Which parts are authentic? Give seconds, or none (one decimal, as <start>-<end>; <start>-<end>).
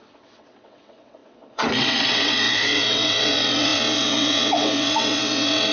none